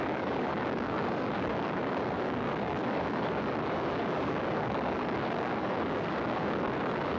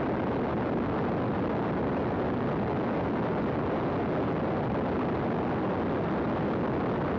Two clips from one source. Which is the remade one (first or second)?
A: first